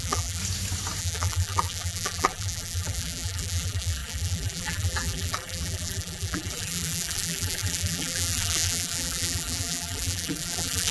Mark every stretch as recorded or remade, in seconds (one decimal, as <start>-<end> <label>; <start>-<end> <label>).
0.0-0.4 remade; 0.4-1.0 recorded; 1.0-10.9 remade